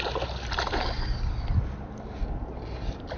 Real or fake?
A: real